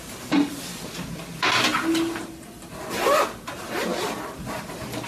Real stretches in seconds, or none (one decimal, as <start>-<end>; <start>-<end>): 0.0-1.7; 2.8-5.1